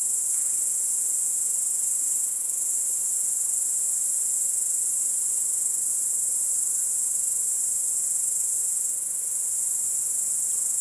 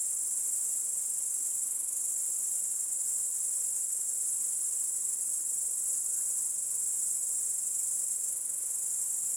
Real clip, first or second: second